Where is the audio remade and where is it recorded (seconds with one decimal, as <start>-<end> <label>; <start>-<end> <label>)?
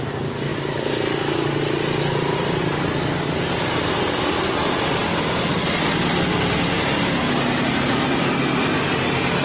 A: 0.0-9.4 recorded